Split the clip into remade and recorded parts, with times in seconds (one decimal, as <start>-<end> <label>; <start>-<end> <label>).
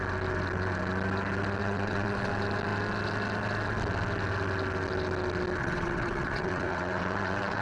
0.0-1.6 recorded; 1.6-2.3 remade; 2.3-5.6 recorded; 5.6-7.6 remade